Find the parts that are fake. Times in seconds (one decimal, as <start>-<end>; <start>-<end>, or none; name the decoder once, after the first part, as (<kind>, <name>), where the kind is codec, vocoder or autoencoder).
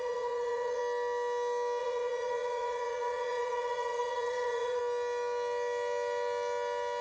0.0-0.8 (vocoder, Vocos); 1.8-4.8